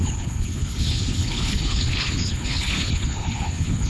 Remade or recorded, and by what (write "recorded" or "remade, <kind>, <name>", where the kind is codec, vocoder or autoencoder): remade, codec, HILCodec